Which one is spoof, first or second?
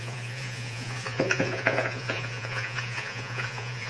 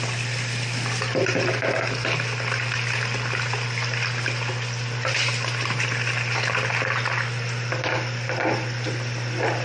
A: first